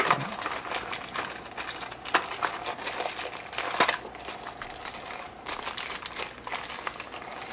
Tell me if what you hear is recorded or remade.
recorded